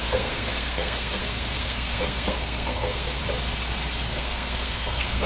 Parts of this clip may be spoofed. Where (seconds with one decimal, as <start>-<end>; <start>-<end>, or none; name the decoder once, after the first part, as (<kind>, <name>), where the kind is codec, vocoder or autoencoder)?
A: 0.0-3.2 (codec, SNAC); 4.1-5.3